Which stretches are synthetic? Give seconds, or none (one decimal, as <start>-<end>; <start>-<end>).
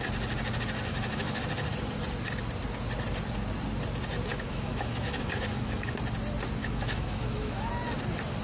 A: 0.9-1.4; 4.3-6.0; 6.6-7.7